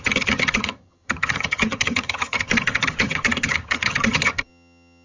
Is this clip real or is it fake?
fake